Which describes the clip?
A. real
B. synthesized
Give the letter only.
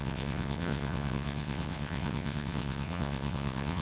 B